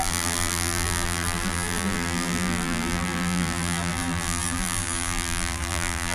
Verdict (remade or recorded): remade